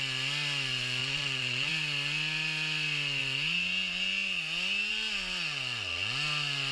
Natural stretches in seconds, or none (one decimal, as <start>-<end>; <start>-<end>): 0.0-1.0; 1.7-6.7